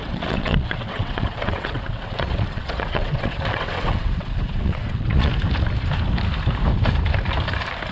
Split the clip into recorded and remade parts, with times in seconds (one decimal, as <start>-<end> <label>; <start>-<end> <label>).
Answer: 0.0-5.3 remade; 5.3-7.9 recorded